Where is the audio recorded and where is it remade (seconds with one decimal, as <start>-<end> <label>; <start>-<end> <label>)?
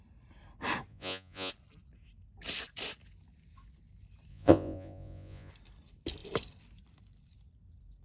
0.0-0.9 recorded; 0.9-1.5 remade; 1.5-4.3 recorded; 4.3-5.5 remade; 5.5-8.0 recorded